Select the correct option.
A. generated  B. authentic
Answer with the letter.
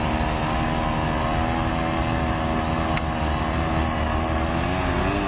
B